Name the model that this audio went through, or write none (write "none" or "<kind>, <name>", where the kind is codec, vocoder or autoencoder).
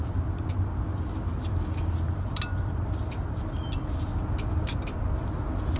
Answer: none